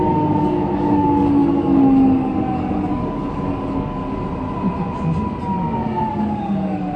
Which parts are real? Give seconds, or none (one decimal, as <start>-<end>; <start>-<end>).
4.0-6.1